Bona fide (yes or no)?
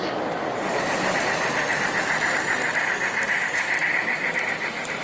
yes